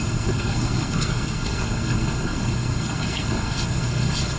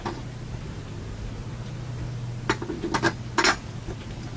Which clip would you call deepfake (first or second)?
first